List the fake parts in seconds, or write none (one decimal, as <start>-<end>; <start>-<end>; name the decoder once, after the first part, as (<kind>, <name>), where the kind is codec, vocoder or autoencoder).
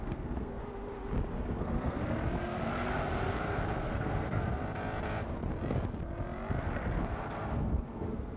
0.0-0.6 (codec, SNAC); 1.4-2.0; 3.8-4.6; 6.6-8.4